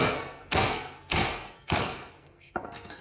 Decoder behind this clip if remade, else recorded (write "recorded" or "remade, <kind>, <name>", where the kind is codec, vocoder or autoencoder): remade, codec, SNAC